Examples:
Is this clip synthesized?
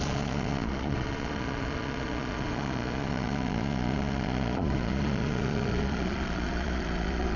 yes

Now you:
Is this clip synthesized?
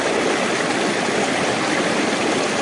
no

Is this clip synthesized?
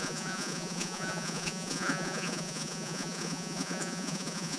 yes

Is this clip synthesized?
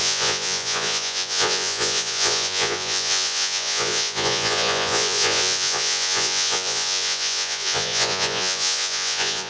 yes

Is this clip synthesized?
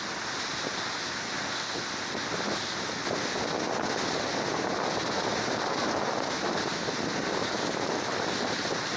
no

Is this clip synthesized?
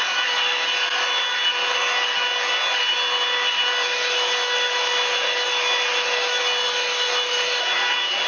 no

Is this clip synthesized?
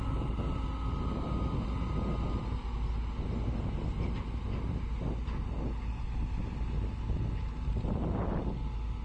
no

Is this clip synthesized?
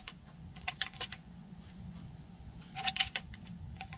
yes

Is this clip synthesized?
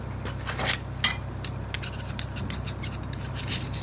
no